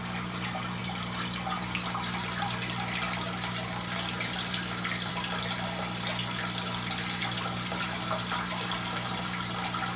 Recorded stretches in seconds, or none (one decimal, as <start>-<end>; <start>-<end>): 0.0-10.0